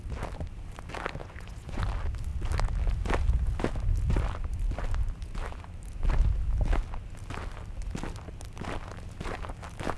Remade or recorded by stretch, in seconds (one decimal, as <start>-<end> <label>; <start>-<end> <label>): 0.0-1.2 recorded; 1.2-1.8 remade; 1.8-10.0 recorded